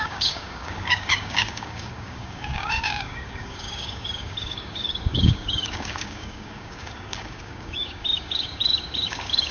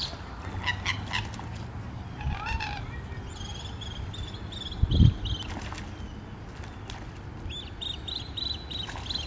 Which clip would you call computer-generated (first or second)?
first